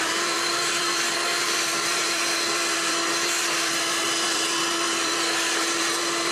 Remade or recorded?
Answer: remade